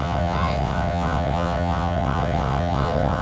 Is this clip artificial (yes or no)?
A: yes